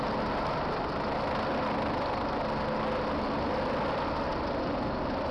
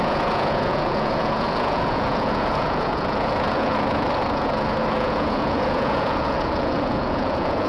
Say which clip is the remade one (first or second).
second